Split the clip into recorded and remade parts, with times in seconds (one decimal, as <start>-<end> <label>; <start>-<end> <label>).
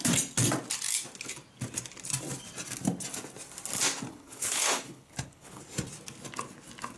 0.0-4.1 recorded; 4.1-5.6 remade; 5.6-7.0 recorded